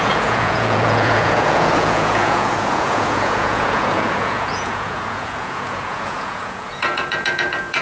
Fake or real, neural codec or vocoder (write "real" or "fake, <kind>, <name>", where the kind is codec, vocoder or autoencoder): fake, vocoder, Vocos